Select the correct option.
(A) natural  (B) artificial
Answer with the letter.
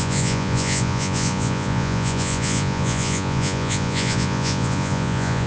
B